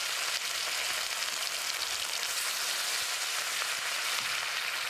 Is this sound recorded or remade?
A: recorded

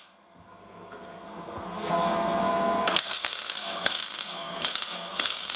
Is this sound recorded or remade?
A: remade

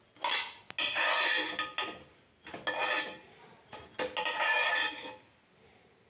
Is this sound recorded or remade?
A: recorded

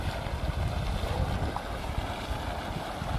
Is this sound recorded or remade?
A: recorded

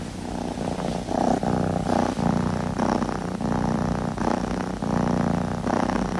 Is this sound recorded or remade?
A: recorded